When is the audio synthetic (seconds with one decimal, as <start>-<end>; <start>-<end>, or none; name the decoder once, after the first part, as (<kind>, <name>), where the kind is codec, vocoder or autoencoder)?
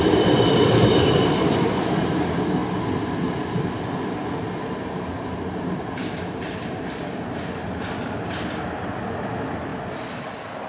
0.0-2.6 (vocoder, BigVGAN v2); 5.2-9.7